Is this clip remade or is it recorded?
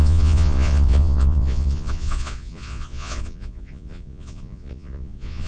remade